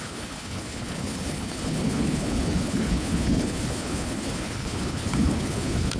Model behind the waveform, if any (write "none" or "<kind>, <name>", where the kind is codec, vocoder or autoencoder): codec, HILCodec